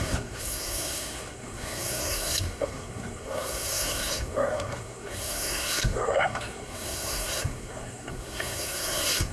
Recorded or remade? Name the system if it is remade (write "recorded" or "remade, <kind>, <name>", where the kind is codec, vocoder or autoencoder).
remade, codec, SNAC